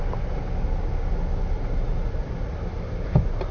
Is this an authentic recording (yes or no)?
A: yes